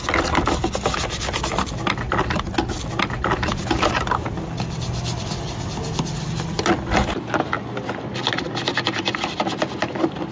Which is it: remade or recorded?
recorded